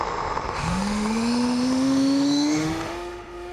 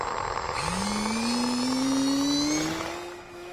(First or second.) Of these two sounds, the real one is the second